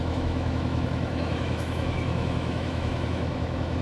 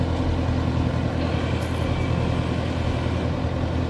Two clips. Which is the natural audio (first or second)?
second